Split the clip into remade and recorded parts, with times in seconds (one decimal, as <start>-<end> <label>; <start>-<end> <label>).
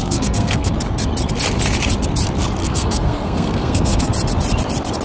0.0-0.7 remade; 0.7-2.6 recorded; 2.6-4.1 remade; 4.1-5.0 recorded